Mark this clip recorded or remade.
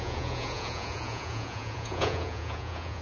remade